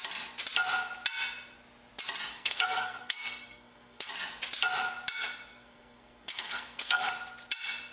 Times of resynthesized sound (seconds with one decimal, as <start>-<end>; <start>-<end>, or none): 2.3-4.1; 5.5-7.1